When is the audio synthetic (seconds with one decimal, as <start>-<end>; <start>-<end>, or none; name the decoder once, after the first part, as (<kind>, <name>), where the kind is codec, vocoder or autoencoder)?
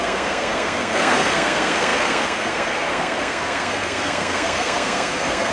0.0-5.5 (codec, SNAC)